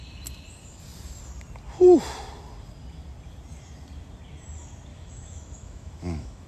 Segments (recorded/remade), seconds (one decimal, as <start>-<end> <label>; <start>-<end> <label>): 0.0-4.9 recorded; 4.9-6.5 remade